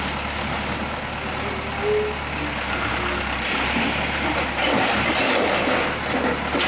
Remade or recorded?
recorded